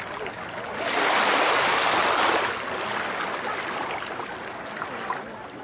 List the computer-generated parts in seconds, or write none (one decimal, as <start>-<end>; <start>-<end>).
none